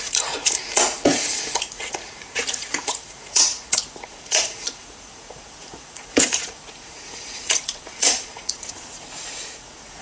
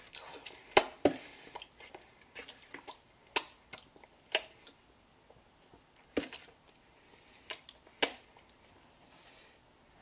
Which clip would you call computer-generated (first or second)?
first